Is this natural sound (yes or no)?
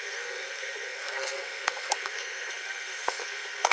no